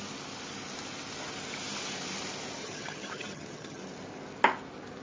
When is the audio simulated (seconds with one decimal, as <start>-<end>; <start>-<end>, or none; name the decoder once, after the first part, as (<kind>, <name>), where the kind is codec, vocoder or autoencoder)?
2.6-3.8 (vocoder, HiFi-GAN)